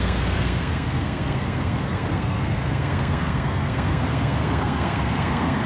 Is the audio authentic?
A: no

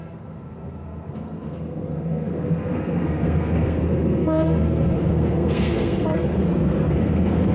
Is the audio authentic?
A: no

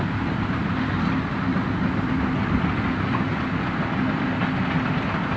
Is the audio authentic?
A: yes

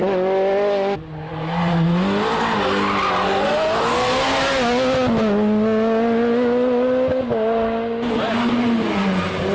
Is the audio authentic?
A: yes